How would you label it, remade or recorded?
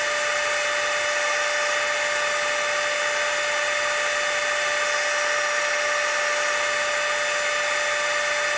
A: recorded